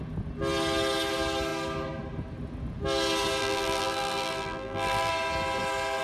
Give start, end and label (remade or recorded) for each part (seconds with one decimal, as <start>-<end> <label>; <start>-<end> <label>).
0.0-3.4 recorded; 3.4-5.1 remade; 5.1-6.0 recorded